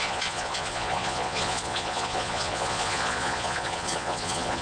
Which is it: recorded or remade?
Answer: remade